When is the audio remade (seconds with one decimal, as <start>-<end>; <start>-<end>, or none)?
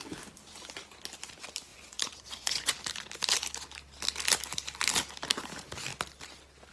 1.7-2.7